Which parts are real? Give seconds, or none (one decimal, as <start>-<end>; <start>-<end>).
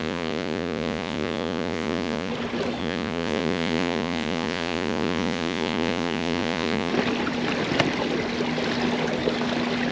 2.3-2.8; 6.9-9.9